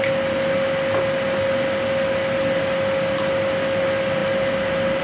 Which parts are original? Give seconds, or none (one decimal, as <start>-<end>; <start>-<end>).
0.0-5.0

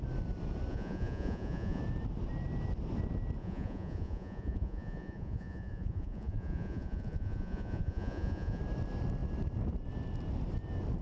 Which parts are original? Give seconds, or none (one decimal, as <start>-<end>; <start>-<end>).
0.0-0.7; 1.8-3.4; 8.6-11.0

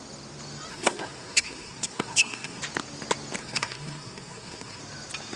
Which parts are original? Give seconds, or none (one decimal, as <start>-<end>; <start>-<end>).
0.0-0.7; 2.6-3.4; 4.8-5.4

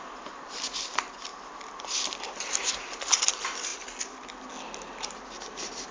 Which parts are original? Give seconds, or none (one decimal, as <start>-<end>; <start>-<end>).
0.0-1.3; 2.7-5.9

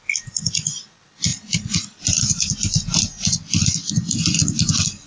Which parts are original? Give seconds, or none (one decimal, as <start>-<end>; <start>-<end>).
0.0-1.3; 3.9-4.4

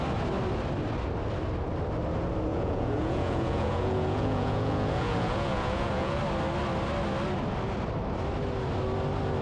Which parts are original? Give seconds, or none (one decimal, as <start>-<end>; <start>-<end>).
0.0-2.5; 6.2-9.4